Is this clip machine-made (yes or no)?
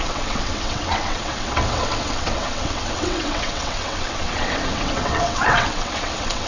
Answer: yes